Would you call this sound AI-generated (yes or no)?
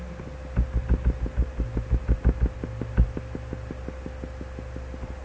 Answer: no